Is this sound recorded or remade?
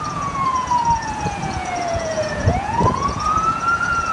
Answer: remade